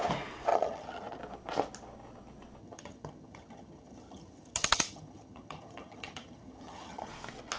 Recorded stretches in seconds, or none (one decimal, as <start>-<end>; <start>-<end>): 0.0-0.5; 1.2-2.6; 7.1-7.6